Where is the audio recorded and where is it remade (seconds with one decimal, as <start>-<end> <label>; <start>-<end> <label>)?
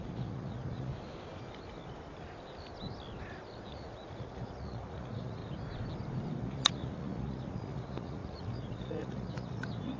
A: 0.0-0.9 remade; 0.9-3.7 recorded; 3.7-5.4 remade; 5.4-6.4 recorded; 6.4-10.0 remade